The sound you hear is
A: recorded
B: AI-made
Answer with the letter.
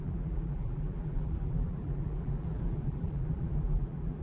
B